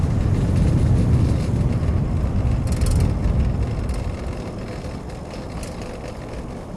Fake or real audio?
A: real